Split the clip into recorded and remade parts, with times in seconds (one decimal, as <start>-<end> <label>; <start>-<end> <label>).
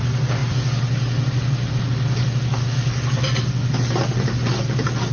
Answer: 0.0-5.1 recorded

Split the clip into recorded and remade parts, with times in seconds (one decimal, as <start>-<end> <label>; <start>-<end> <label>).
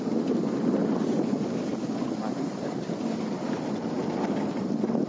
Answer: 0.0-5.1 recorded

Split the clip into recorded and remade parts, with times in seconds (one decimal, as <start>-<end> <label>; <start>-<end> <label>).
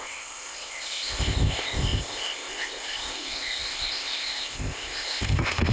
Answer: 0.0-5.7 remade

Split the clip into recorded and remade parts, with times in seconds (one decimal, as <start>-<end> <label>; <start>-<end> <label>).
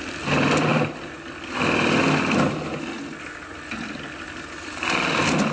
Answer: 0.0-5.5 recorded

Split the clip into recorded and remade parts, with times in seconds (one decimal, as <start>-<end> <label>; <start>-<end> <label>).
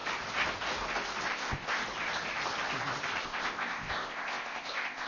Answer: 0.0-1.3 recorded; 1.3-1.8 remade; 1.8-3.2 recorded; 3.2-5.1 remade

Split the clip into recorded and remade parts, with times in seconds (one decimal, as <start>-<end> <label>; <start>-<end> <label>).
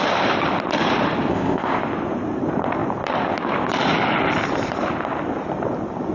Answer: 0.0-1.3 recorded; 1.3-1.8 remade; 1.8-6.1 recorded